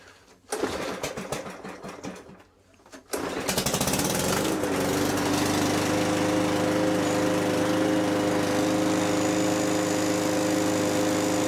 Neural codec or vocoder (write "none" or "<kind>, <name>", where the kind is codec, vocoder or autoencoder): none